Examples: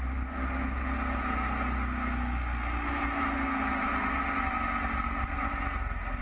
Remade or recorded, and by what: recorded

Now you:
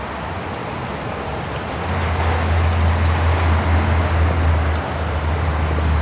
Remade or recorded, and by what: recorded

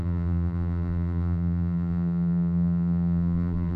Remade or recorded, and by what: remade, vocoder, BigVGAN v2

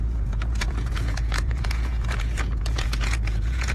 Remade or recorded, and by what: remade, vocoder, Vocos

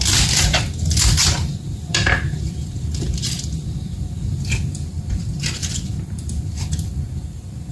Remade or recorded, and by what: remade, vocoder, BigVGAN v2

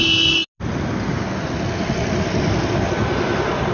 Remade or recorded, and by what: recorded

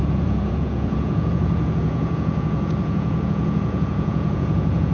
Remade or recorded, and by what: remade, vocoder, Vocos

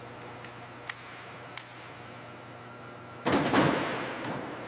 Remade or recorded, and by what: recorded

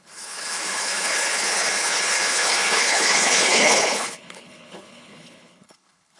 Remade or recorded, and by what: remade, codec, HILCodec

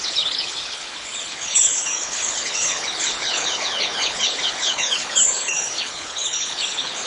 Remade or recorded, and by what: remade, codec, HILCodec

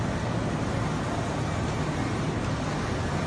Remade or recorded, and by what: recorded